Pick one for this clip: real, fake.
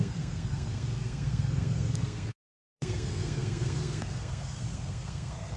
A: fake